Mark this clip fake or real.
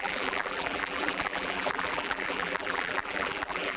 fake